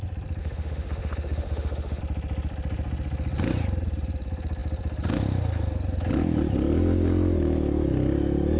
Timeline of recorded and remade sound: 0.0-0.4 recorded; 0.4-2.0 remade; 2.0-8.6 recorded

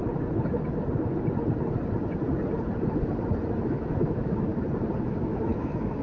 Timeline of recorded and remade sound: 0.0-3.6 recorded; 3.6-4.5 remade; 4.5-5.0 recorded; 5.0-6.0 remade